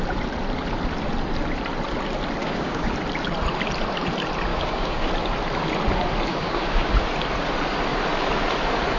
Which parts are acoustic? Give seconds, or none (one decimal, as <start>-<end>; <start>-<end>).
0.0-2.4; 2.9-4.5; 5.1-6.3; 6.9-9.0